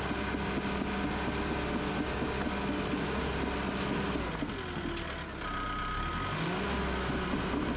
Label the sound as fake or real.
real